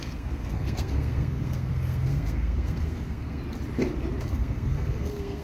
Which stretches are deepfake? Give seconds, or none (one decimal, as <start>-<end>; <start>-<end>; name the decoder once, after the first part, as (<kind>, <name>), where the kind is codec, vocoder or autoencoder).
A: 0.0-3.4 (codec, SNAC); 4.2-5.4